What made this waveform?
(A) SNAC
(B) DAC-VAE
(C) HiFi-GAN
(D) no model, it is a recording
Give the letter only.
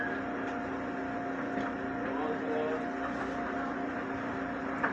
D